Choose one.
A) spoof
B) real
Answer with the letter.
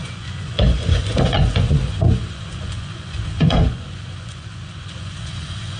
A